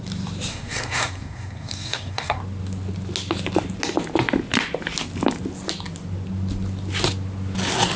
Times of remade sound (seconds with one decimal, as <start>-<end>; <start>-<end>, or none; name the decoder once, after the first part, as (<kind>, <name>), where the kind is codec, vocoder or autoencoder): 0.5-2.4 (codec, SNAC)